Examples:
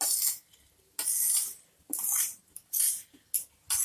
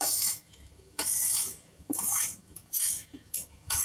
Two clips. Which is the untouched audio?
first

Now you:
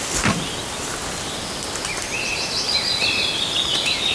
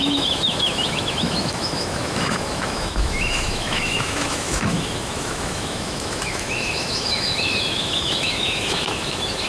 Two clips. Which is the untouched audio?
first